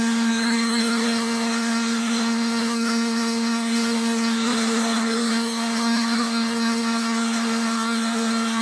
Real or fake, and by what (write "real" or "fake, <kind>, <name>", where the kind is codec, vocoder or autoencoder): fake, codec, SNAC